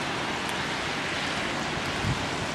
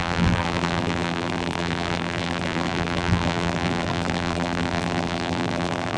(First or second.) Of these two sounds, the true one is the first